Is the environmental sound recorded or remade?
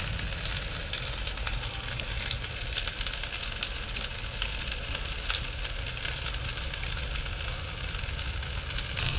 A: recorded